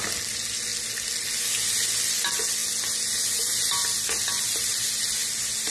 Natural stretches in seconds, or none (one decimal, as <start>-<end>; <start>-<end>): 0.0-5.7